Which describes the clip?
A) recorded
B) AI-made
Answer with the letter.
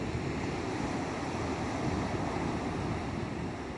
A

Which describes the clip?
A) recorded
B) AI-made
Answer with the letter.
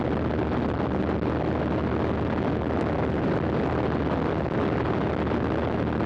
A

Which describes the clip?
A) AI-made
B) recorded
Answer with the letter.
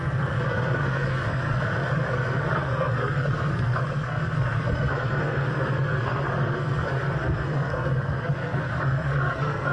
A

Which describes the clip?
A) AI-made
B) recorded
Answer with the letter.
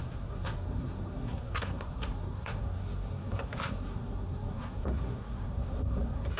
A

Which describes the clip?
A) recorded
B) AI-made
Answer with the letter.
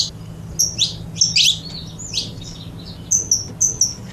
A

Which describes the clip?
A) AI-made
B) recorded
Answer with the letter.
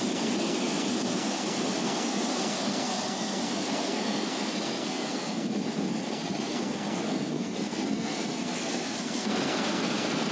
A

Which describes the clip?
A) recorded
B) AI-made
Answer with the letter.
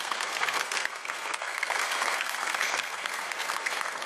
B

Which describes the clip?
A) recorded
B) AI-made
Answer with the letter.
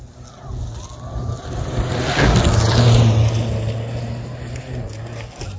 A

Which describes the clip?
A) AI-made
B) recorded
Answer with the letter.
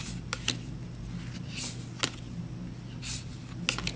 B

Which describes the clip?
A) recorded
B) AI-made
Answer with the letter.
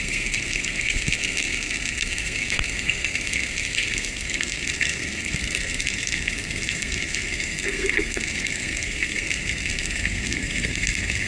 B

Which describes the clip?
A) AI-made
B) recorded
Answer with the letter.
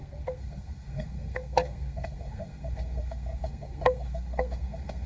A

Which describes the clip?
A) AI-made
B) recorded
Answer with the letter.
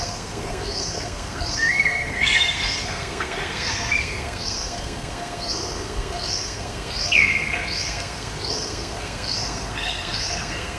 A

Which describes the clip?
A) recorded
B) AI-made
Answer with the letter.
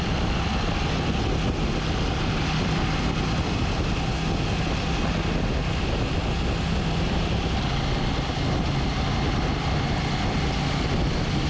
A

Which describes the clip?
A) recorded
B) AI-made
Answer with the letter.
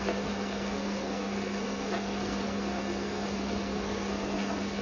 B